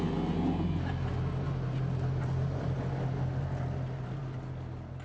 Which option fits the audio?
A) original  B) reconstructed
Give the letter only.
A